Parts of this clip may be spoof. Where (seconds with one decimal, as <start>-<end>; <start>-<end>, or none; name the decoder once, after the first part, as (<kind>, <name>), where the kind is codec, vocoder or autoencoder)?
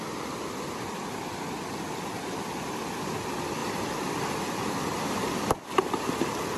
none